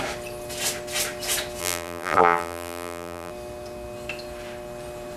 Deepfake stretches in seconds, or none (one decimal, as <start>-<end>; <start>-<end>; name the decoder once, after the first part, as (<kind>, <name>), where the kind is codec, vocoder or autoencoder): 1.6-3.3 (vocoder, BigVGAN v2)